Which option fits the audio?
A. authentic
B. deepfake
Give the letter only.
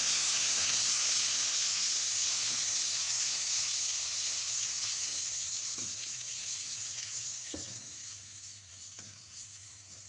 B